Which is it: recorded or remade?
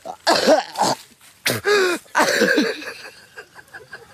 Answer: recorded